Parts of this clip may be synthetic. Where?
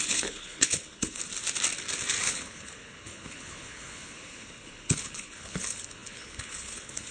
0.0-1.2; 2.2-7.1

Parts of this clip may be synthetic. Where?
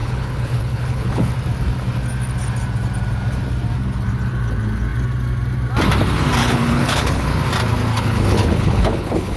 0.0-1.3; 6.4-7.4; 7.9-9.4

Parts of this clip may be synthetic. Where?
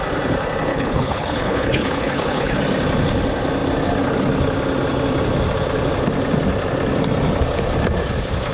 0.7-2.6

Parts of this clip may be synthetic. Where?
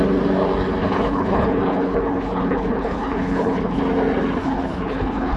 0.8-3.8; 4.4-5.4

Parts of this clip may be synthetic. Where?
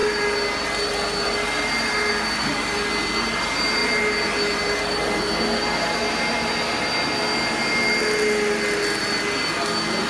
none